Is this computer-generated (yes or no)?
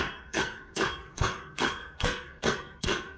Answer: yes